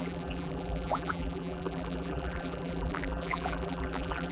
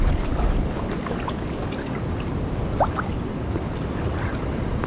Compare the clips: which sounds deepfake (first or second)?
first